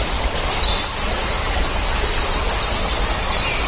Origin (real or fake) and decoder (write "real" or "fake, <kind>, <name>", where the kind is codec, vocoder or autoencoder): real